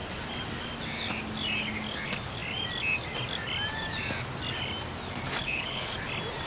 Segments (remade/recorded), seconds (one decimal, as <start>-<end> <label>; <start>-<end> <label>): 0.0-5.4 recorded; 5.4-5.9 remade; 5.9-6.5 recorded